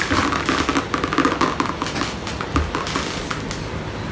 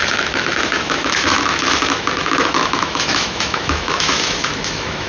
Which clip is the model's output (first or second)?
second